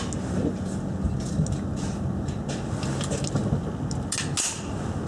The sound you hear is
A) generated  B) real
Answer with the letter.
B